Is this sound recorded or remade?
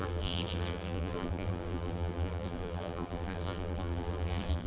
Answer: remade